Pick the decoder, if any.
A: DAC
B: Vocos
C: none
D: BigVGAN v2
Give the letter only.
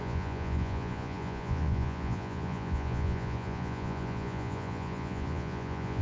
B